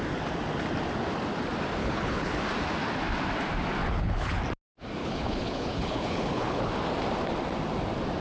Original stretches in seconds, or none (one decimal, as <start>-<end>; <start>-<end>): 0.0-1.8; 2.3-3.8; 4.4-5.0; 6.7-8.2